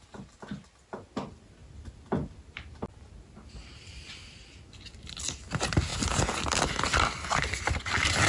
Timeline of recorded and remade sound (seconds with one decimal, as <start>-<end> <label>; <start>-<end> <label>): 0.0-8.3 recorded